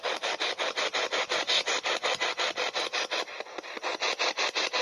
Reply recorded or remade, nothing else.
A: recorded